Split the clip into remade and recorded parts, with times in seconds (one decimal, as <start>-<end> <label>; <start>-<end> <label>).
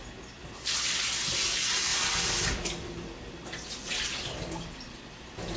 0.0-0.4 recorded; 0.4-1.0 remade; 1.0-1.9 recorded; 1.9-5.6 remade